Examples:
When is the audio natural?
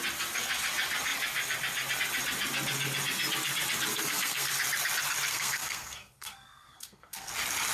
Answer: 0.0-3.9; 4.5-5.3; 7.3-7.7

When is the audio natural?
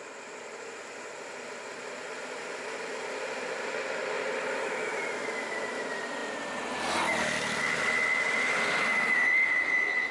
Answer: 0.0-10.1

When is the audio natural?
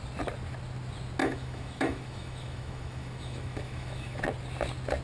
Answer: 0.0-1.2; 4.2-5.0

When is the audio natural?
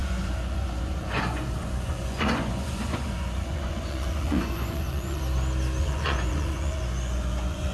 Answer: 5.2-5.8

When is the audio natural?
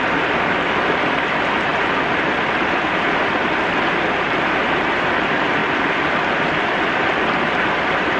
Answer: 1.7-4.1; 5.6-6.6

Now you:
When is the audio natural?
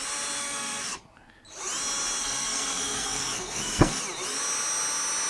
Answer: 0.0-0.4; 1.0-2.2; 4.0-5.3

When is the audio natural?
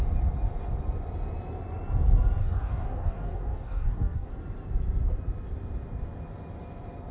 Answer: 0.0-2.4; 4.3-7.1